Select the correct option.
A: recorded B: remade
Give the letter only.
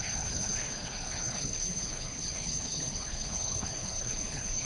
B